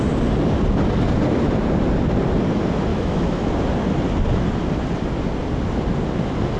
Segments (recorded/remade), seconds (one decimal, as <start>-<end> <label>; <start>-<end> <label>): 0.0-2.9 recorded; 2.9-3.5 remade; 3.5-6.6 recorded